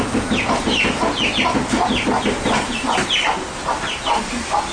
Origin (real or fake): real